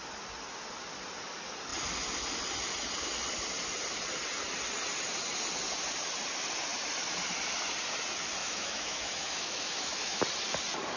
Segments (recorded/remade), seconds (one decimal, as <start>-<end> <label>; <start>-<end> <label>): 0.0-8.4 recorded; 8.4-10.2 remade; 10.2-11.0 recorded